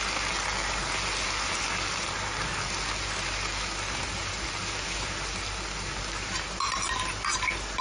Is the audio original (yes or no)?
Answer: yes